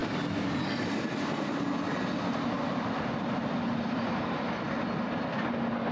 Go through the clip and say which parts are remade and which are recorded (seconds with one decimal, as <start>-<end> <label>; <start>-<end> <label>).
0.0-5.9 recorded